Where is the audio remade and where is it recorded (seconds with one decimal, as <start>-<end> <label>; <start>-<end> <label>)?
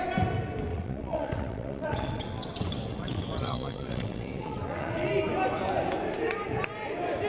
0.0-0.7 recorded; 0.7-5.1 remade; 5.1-7.3 recorded